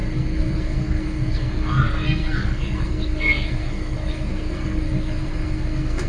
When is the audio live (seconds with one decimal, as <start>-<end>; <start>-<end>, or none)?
none